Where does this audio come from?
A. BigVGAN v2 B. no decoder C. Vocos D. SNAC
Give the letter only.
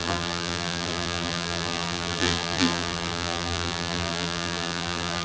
A